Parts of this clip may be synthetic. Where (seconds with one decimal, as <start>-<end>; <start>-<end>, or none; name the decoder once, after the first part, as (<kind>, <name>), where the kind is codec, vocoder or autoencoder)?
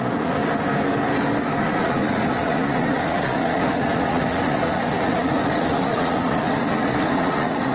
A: 0.0-0.4 (vocoder, Vocos); 1.6-7.7